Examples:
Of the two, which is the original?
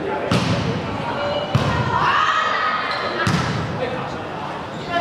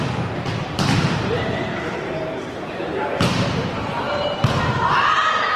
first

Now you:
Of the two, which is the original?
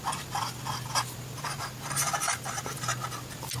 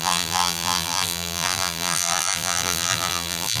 first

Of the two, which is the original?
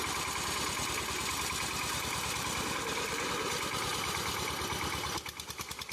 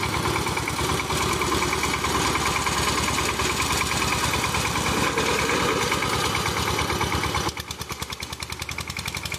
second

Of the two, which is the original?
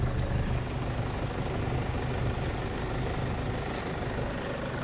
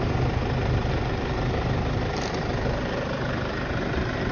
first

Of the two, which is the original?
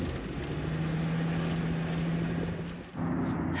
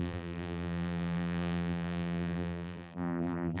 first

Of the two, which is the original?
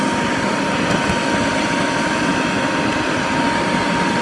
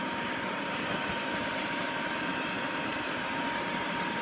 first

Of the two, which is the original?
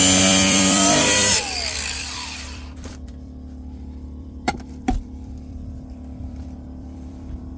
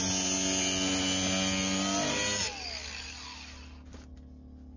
second